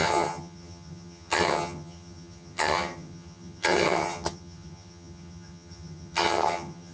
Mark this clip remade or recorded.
remade